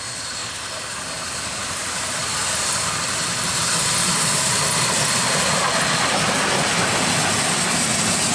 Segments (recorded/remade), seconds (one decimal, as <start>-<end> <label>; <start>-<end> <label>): 0.0-8.3 recorded